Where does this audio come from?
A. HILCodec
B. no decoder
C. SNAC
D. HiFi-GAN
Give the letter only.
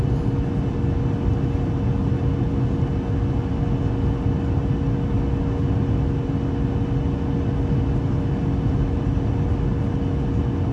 B